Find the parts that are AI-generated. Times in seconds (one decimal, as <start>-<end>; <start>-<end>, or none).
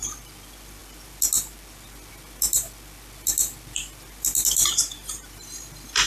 none